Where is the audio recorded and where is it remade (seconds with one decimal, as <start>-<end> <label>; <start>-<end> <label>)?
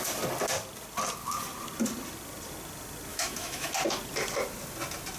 0.0-3.1 recorded; 3.1-3.7 remade; 3.7-5.2 recorded